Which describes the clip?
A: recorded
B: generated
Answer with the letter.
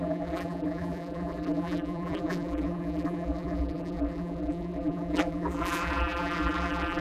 B